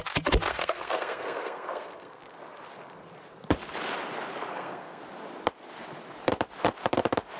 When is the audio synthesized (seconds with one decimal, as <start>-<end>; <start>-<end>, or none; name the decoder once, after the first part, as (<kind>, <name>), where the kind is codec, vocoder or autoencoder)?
0.5-2.2 (codec, SNAC); 4.5-5.0